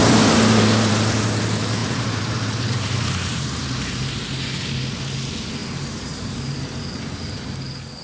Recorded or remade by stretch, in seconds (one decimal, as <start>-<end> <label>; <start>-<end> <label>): 0.0-1.3 remade; 1.3-1.8 recorded; 1.8-4.9 remade; 4.9-5.6 recorded; 5.6-6.8 remade; 6.8-8.0 recorded